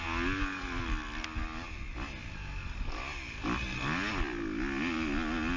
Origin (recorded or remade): recorded